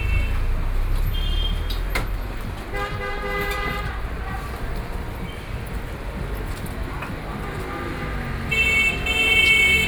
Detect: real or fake real